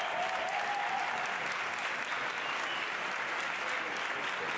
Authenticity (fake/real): real